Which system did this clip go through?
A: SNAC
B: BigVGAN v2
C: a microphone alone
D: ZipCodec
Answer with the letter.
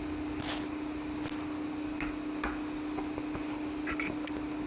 C